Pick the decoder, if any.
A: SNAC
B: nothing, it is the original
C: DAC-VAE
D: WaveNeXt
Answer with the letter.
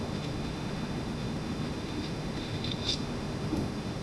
C